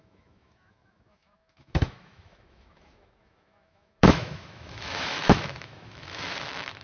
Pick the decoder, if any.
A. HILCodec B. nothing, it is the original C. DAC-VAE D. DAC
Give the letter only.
C